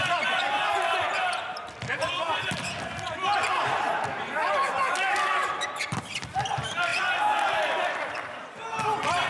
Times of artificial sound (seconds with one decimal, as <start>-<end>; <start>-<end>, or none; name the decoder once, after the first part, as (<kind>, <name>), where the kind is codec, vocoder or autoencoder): none